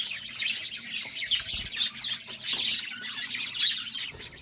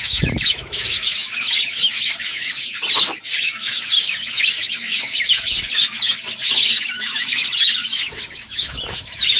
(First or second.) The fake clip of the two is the second